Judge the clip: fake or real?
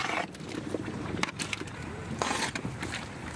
fake